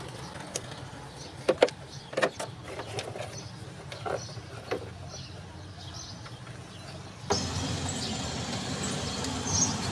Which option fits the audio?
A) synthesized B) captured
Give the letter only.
B